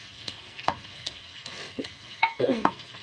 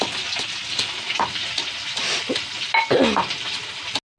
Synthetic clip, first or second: first